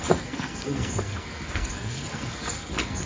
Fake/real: fake